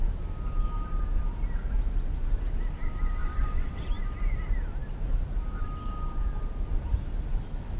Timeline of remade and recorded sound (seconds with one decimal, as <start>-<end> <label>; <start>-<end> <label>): 0.0-3.2 recorded; 3.2-3.9 remade; 3.9-7.8 recorded